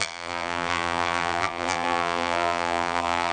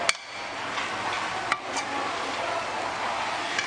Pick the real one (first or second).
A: second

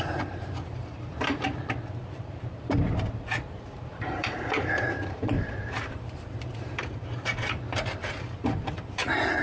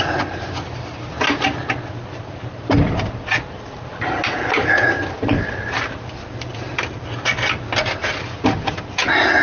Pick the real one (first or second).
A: second